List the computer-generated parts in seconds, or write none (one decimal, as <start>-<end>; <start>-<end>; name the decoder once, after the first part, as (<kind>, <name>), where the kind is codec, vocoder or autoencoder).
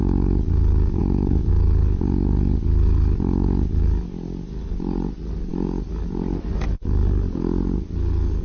1.0-1.5 (vocoder, BigVGAN v2)